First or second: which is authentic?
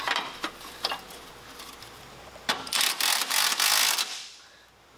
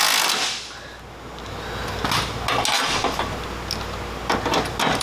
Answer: second